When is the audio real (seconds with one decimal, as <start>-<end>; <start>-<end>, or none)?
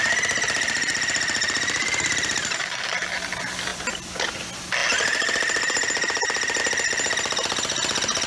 0.0-8.3